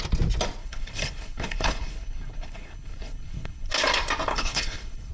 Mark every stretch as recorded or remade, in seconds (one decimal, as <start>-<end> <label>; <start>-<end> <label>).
0.0-0.6 recorded; 0.6-3.7 remade; 3.7-4.3 recorded; 4.3-5.1 remade

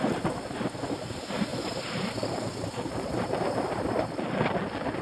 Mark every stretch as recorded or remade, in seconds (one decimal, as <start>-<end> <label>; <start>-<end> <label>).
0.0-5.0 recorded

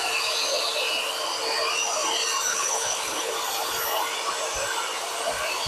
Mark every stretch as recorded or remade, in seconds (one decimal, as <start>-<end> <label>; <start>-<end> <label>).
0.0-2.5 recorded; 2.5-3.3 remade; 3.3-5.7 recorded

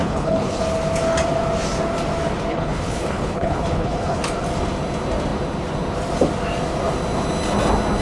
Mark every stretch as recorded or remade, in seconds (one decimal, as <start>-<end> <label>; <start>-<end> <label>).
0.0-0.6 remade; 0.6-2.5 recorded; 2.5-4.2 remade; 4.2-8.0 recorded

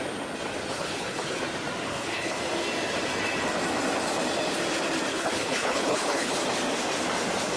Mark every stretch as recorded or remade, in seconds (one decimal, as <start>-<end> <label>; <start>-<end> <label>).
0.0-0.7 recorded; 0.7-1.4 remade; 1.4-1.9 recorded; 1.9-2.4 remade; 2.4-5.1 recorded; 5.1-6.3 remade; 6.3-7.6 recorded

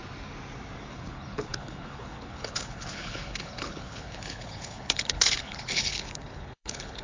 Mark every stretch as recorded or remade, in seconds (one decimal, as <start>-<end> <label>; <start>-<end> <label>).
0.0-0.9 recorded; 0.9-7.0 remade